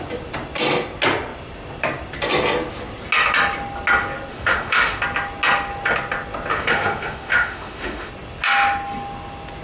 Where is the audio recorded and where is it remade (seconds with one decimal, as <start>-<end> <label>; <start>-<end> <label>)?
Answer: 0.0-4.3 recorded; 4.3-5.0 remade; 5.0-6.5 recorded; 6.5-8.1 remade; 8.1-9.6 recorded